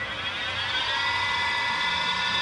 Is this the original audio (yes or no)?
yes